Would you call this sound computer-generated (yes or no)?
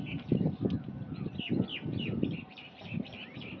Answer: no